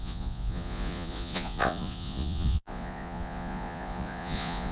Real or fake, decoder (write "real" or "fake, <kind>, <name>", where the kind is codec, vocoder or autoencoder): fake, vocoder, Vocos